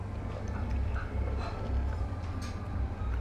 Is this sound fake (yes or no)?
no